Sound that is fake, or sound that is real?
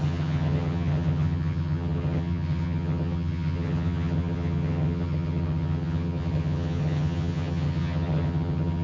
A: fake